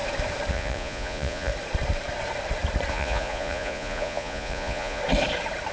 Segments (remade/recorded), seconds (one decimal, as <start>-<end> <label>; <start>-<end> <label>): 0.0-0.5 recorded; 0.5-1.5 remade; 1.5-2.9 recorded; 2.9-5.0 remade; 5.0-5.7 recorded